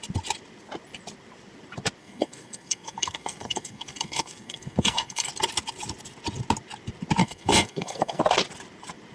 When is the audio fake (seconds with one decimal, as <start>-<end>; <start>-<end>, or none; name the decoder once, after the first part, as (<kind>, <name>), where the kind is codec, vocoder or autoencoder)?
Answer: 2.0-5.3 (codec, SNAC); 7.2-8.2